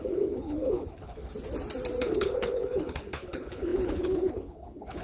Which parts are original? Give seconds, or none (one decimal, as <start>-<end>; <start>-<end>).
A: 1.3-2.0